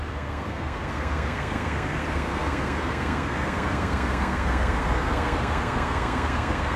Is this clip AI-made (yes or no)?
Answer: yes